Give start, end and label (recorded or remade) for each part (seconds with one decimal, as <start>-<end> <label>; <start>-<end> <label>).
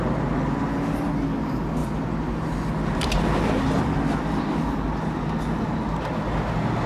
0.0-6.9 recorded